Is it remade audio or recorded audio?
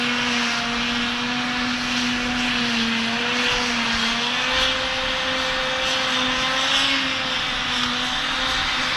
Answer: recorded